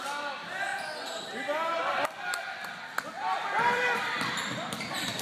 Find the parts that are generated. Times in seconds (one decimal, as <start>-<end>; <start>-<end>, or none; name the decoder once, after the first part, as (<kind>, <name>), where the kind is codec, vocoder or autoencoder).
none